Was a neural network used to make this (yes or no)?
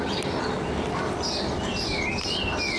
no